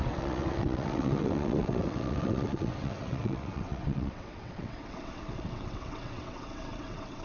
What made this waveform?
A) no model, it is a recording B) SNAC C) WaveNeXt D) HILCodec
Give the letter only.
C